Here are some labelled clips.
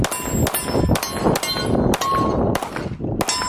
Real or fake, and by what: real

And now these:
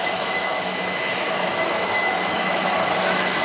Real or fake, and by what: fake, autoencoder, DAC-VAE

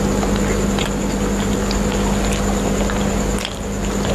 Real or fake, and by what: real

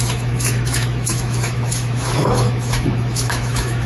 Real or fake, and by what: fake, autoencoder, DAC-VAE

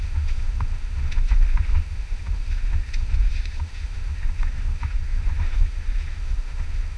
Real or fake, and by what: fake, autoencoder, DAC-VAE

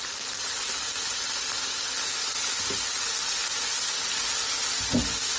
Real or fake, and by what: real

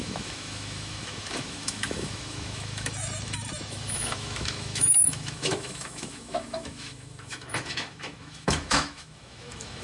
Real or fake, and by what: fake, autoencoder, DAC-VAE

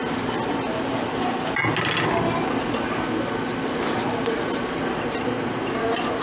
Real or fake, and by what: real